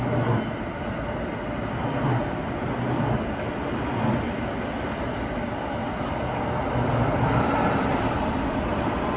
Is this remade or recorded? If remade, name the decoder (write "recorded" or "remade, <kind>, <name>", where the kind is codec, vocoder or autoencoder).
recorded